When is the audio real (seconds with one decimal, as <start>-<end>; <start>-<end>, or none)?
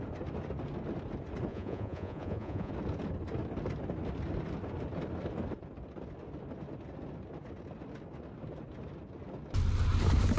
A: 0.0-1.5; 2.7-10.4